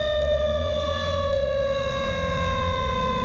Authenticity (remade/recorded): remade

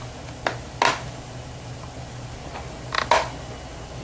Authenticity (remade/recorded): recorded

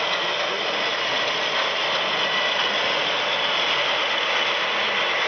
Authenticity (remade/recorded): recorded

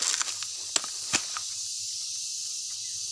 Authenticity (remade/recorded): recorded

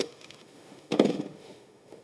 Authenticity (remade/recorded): remade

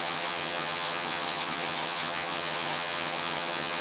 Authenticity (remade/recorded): remade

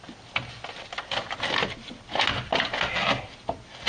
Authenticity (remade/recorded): recorded